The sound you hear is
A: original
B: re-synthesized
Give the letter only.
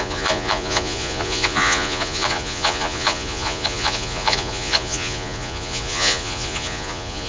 B